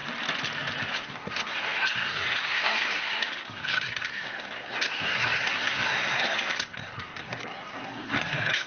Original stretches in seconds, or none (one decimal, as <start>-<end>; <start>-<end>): 0.0-0.9